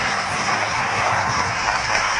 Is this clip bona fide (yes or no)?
no